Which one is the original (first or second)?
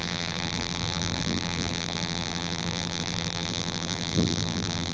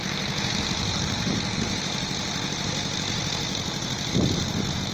second